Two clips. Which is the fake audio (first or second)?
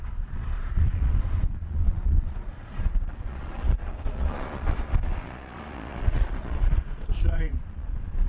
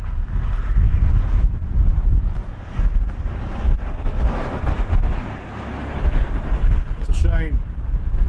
first